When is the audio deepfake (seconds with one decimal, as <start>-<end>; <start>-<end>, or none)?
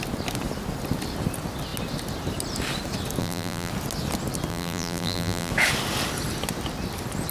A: 3.2-3.7; 4.5-5.5